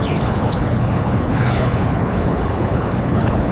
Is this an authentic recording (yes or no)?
no